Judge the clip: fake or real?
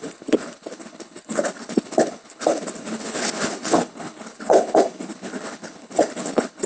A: fake